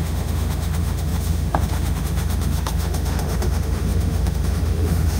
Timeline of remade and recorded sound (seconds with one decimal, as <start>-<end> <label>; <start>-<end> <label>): 0.0-5.2 remade